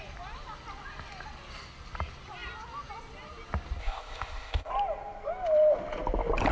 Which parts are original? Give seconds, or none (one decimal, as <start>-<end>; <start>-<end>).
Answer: 0.0-3.8; 4.7-6.5